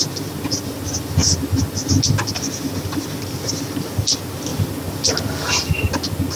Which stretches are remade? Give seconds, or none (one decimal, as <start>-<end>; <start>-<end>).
1.2-3.0